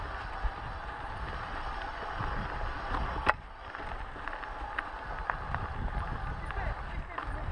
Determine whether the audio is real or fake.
real